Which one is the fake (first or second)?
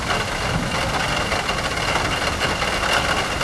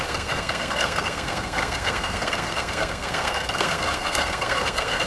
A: second